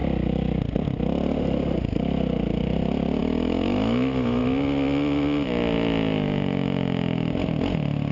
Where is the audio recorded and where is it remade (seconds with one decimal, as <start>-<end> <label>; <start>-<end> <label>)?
0.0-3.2 recorded; 3.2-4.4 remade; 4.4-8.1 recorded